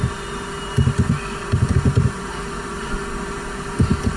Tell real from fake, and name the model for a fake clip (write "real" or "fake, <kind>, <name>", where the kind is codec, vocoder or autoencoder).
real